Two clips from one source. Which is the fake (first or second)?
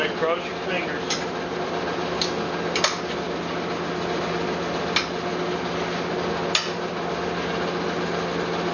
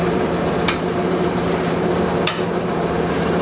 second